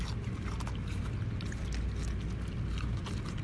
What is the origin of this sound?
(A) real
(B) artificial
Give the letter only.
A